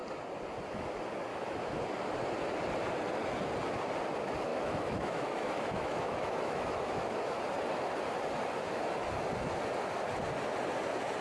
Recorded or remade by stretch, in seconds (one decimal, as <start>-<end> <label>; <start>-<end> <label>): 0.0-1.3 recorded; 1.3-1.8 remade; 1.8-4.5 recorded; 4.5-7.4 remade; 7.4-11.2 recorded

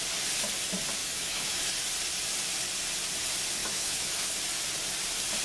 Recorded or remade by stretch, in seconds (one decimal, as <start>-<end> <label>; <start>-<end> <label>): 0.0-1.0 recorded; 1.0-1.6 remade; 1.6-3.6 recorded; 3.6-4.3 remade; 4.3-5.4 recorded